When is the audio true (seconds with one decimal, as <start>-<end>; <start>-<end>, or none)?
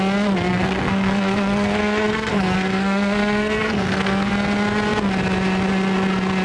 0.0-0.5; 4.3-6.4